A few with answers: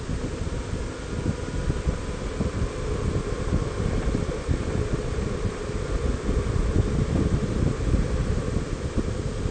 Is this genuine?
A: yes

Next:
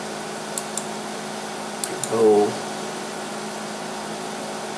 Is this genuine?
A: yes